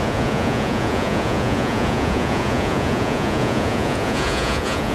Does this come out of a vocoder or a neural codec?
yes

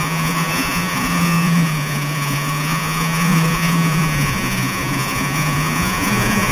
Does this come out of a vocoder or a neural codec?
yes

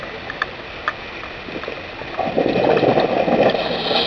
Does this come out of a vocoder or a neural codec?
no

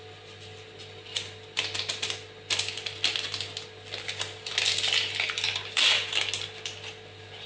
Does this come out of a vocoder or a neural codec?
no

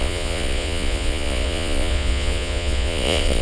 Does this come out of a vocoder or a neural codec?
yes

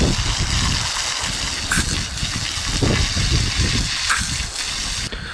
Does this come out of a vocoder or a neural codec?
no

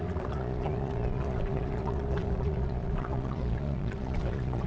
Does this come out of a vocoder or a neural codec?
yes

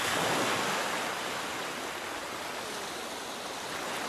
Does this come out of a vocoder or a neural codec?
no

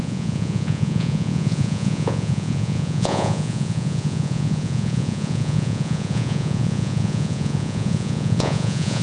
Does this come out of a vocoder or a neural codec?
yes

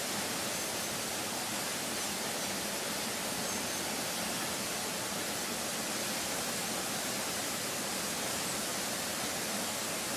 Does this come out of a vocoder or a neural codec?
no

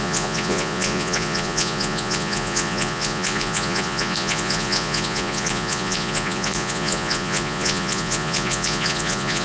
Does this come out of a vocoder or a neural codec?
yes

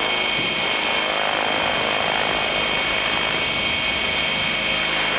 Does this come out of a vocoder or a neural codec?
no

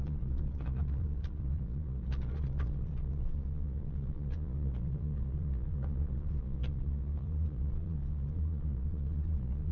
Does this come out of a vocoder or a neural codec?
yes